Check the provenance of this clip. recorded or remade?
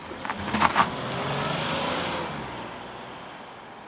recorded